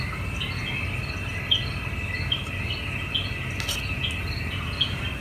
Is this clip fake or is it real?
real